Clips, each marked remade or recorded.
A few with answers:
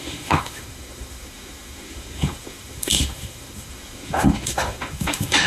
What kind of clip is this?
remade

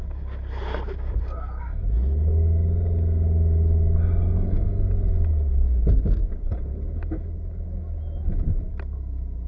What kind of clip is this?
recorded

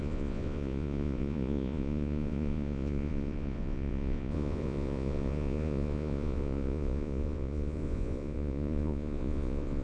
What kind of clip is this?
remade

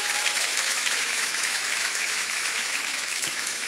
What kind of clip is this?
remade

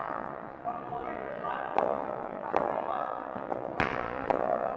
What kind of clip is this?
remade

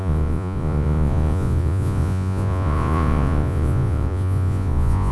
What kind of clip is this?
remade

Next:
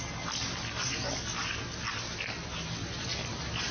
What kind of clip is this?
recorded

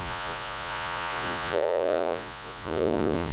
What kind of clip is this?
remade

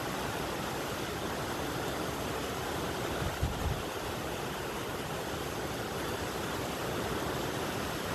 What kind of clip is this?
recorded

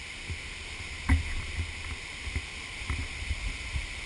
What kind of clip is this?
recorded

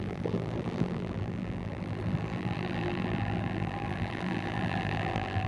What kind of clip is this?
remade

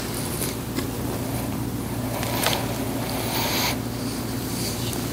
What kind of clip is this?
remade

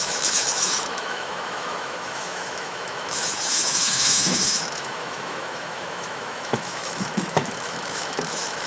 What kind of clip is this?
remade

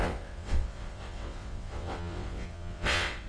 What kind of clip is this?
remade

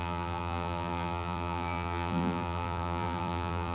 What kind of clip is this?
remade